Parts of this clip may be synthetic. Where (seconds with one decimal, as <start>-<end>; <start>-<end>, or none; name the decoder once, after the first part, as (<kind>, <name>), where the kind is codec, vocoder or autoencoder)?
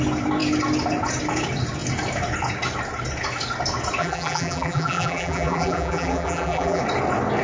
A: 4.0-6.8 (vocoder, BigVGAN v2)